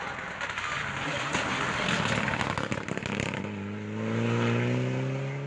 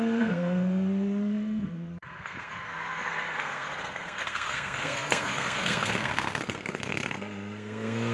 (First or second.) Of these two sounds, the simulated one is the second